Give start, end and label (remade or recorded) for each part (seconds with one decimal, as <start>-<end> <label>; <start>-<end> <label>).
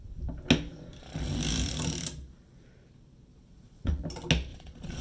0.0-3.3 recorded; 3.3-4.0 remade; 4.0-4.5 recorded; 4.5-5.0 remade